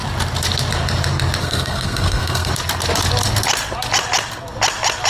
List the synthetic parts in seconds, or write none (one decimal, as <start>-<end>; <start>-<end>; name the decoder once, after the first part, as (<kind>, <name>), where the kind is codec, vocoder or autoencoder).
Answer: 1.4-2.5 (codec, SNAC)